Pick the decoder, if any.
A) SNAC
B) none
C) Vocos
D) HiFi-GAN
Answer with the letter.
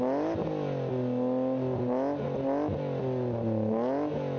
B